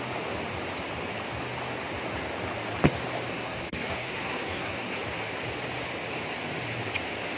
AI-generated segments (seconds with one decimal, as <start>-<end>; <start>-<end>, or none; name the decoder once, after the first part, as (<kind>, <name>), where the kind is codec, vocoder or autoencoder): 3.3-5.0 (codec, SNAC)